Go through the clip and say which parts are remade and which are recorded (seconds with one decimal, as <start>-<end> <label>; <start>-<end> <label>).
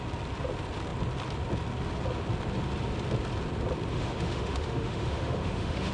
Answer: 0.0-3.9 recorded; 3.9-5.9 remade